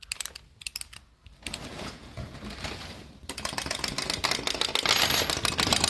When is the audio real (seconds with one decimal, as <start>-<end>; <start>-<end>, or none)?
0.0-1.7; 2.4-5.9